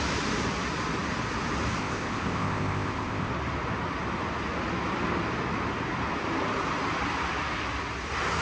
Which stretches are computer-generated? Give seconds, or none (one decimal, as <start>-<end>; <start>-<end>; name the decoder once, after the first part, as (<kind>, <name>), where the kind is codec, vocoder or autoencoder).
1.8-3.3 (codec, ZipCodec)

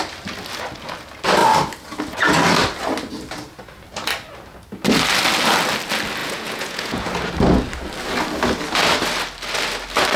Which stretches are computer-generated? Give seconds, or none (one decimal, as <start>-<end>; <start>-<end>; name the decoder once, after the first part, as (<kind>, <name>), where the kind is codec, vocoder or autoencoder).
6.2-7.1 (vocoder, Vocos)